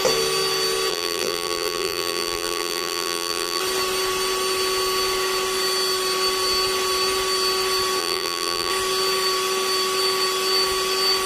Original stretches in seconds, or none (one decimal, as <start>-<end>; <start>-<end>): 0.0-0.9; 3.6-8.0; 8.7-11.3